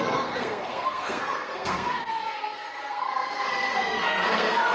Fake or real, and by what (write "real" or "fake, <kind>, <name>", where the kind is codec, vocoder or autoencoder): fake, codec, SNAC